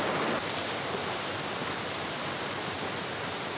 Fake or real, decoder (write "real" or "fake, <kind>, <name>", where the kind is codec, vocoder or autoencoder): real